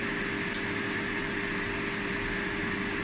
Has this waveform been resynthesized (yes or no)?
no